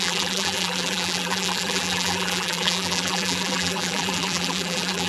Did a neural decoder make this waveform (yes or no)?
yes